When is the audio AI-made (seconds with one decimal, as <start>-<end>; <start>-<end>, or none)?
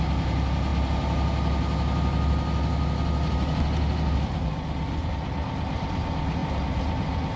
none